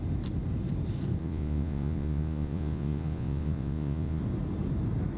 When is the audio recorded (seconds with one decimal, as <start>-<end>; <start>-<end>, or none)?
0.0-1.2; 4.2-5.2